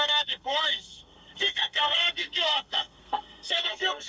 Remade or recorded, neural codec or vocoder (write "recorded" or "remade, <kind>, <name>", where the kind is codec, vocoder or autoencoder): remade, codec, SNAC